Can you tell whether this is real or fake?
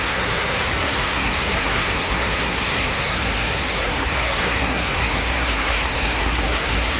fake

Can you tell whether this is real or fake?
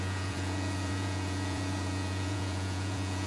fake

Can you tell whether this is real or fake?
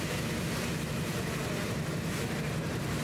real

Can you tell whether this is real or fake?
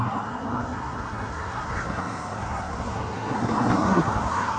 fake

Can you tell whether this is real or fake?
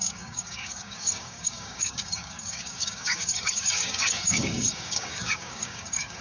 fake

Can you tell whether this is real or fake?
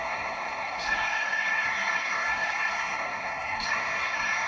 fake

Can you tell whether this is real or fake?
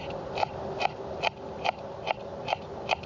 real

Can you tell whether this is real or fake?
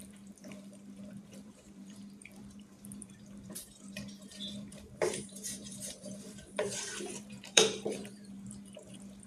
fake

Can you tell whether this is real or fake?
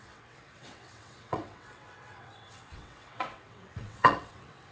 fake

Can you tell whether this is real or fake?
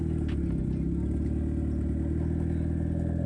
real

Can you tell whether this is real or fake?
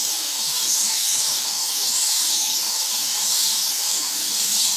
fake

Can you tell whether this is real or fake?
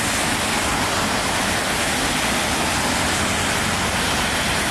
real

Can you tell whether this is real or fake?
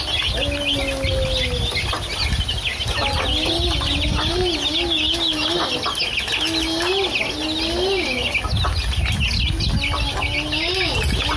real